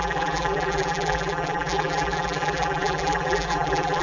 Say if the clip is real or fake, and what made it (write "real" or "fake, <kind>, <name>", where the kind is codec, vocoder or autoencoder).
fake, vocoder, BigVGAN v2